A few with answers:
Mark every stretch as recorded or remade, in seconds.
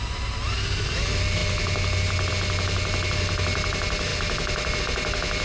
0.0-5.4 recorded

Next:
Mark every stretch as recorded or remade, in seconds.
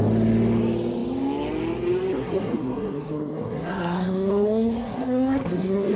0.0-2.1 recorded; 2.1-6.0 remade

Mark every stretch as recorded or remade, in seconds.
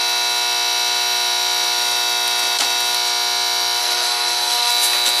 0.0-3.8 recorded; 3.8-4.7 remade; 4.7-5.2 recorded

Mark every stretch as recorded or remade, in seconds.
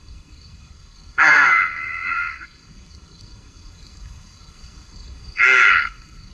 0.0-6.3 remade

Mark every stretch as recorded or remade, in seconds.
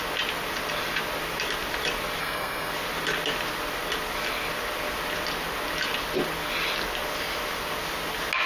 0.0-2.2 recorded; 2.2-2.7 remade; 2.7-8.5 recorded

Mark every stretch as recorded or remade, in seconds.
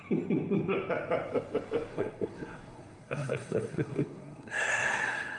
0.0-1.9 recorded; 1.9-5.4 remade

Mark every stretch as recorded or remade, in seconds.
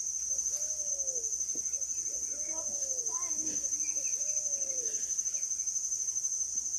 0.0-6.8 recorded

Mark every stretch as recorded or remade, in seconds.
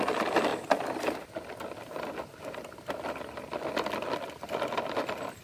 0.0-5.4 recorded